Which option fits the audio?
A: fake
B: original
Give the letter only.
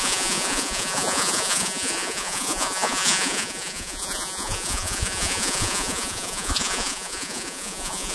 A